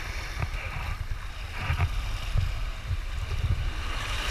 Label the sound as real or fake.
real